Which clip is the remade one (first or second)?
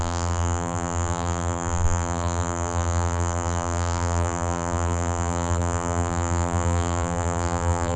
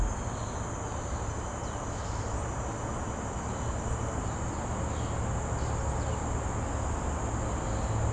first